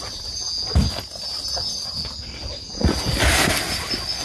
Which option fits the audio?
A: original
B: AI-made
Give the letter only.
A